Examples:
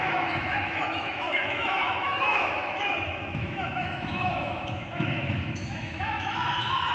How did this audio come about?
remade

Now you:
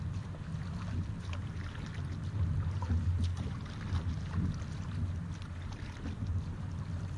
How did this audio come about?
recorded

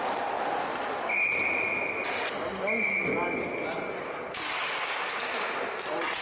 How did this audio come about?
recorded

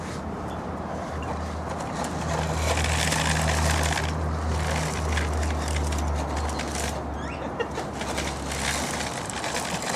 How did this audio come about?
recorded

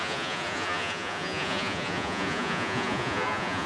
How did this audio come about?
remade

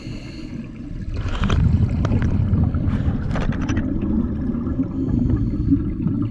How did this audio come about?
recorded